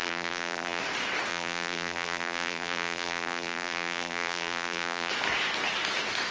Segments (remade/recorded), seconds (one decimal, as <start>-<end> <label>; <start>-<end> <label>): 0.0-0.8 remade; 0.8-1.3 recorded; 1.3-5.1 remade; 5.1-6.3 recorded